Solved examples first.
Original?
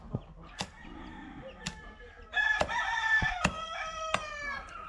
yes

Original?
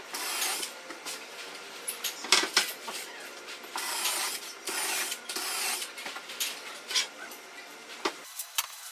yes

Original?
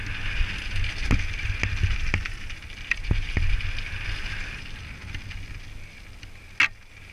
yes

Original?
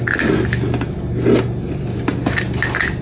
yes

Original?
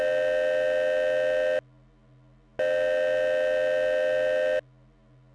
yes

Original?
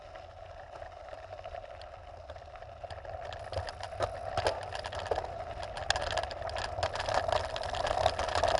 yes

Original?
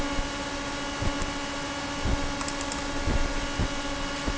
yes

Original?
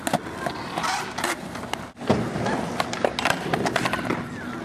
yes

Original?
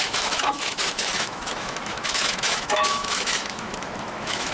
no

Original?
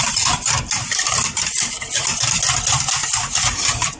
yes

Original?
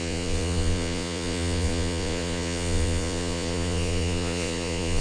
no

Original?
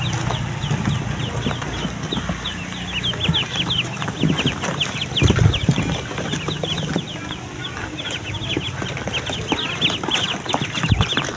yes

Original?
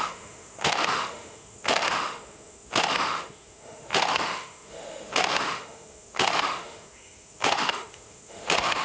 no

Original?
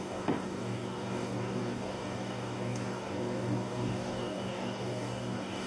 no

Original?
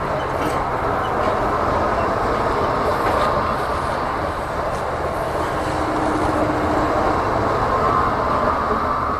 yes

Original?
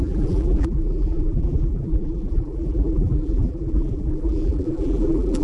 no